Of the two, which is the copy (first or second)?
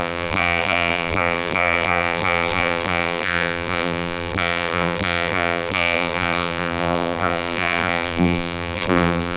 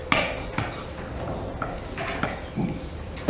first